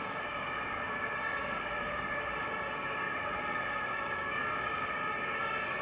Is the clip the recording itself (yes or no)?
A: no